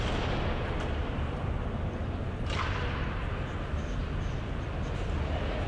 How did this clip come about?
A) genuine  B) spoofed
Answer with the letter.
A